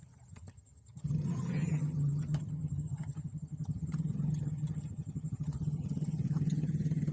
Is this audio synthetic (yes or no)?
yes